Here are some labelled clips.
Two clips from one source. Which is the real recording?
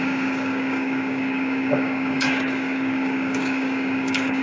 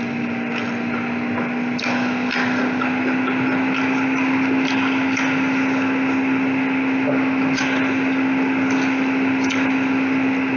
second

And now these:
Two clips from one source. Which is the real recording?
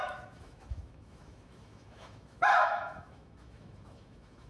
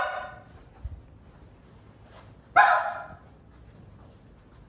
second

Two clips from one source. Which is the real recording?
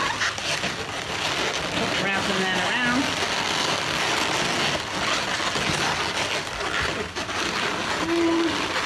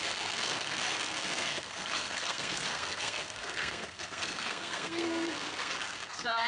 first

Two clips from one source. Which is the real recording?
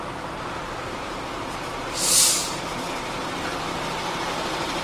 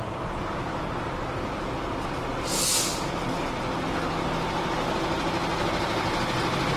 second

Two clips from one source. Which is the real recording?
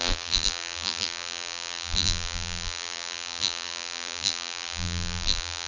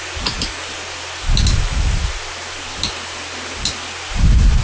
second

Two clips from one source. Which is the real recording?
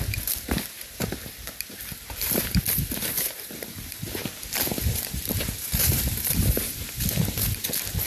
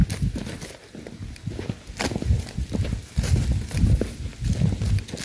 second